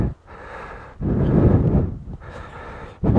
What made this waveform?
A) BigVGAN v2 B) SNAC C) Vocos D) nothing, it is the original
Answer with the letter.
D